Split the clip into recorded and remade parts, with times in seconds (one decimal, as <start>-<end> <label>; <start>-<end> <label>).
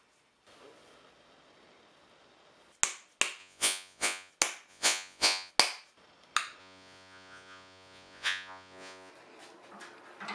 0.0-3.4 recorded; 3.4-4.3 remade; 4.3-4.7 recorded; 4.7-5.5 remade; 5.5-6.6 recorded; 6.6-9.1 remade; 9.1-10.3 recorded